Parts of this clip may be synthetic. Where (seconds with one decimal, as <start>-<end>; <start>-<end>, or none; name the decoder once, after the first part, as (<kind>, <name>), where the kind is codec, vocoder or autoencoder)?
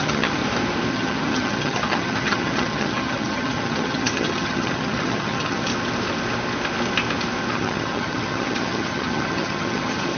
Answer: 0.0-0.4 (vocoder, HiFi-GAN); 0.9-5.7; 7.5-10.2